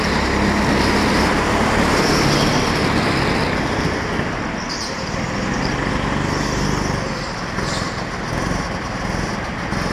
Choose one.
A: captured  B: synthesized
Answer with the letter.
A